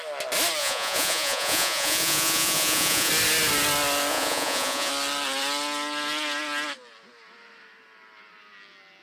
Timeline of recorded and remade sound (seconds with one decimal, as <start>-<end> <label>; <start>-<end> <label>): 0.0-0.6 recorded; 0.6-3.1 remade; 3.1-4.1 recorded; 4.1-4.9 remade; 4.9-9.0 recorded